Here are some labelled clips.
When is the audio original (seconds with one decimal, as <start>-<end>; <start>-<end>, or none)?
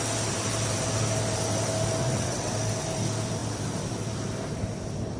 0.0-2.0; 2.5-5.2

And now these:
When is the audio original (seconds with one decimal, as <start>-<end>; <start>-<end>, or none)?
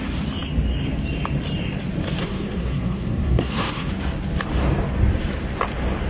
0.0-2.2; 3.9-6.1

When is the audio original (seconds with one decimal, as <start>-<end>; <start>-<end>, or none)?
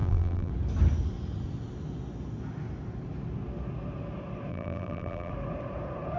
0.5-4.5; 5.3-6.2